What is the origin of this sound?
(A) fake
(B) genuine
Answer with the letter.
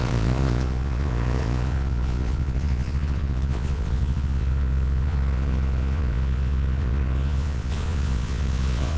A